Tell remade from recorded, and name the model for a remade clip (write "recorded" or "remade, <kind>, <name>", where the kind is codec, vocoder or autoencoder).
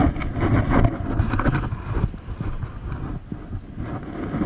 recorded